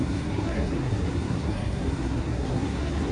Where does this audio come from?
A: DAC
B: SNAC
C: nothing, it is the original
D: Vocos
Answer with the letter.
B